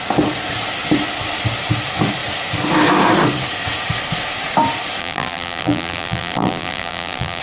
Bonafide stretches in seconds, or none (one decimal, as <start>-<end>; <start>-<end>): 0.0-5.0